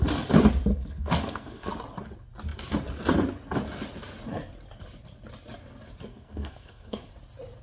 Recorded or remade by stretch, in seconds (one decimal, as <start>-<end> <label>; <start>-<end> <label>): 0.0-0.7 recorded; 0.7-1.7 remade; 1.7-6.1 recorded; 6.1-7.1 remade; 7.1-7.6 recorded